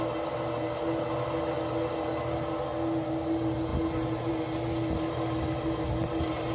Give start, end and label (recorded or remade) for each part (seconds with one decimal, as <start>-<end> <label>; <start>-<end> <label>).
0.0-6.5 recorded